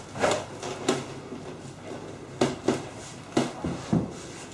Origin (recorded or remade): recorded